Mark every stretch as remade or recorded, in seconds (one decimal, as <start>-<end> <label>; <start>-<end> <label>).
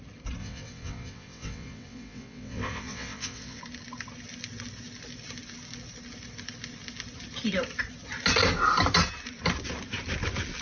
0.0-0.4 recorded; 0.4-3.6 remade; 3.6-10.6 recorded